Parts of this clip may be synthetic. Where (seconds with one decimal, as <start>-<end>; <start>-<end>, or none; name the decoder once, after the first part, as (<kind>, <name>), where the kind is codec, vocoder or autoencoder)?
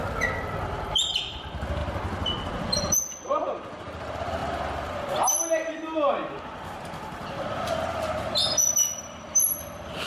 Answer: none